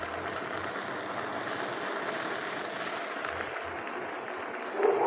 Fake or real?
real